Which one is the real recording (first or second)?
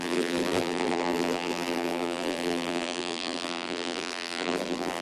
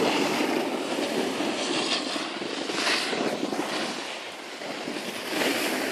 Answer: second